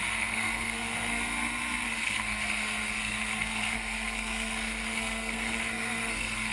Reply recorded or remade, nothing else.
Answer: remade